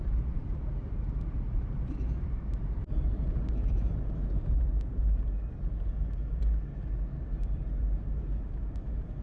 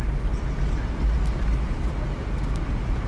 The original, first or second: second